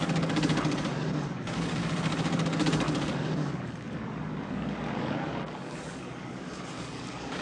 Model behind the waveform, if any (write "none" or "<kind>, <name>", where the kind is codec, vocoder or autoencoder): codec, DAC